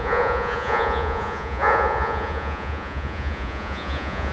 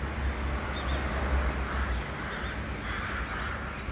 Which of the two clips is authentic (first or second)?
second